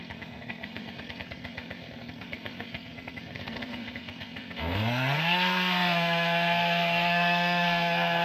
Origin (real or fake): fake